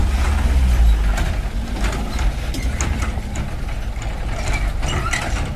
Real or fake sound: real